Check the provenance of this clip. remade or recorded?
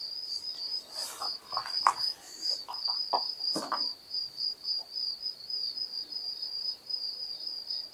recorded